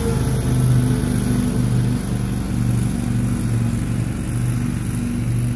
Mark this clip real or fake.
real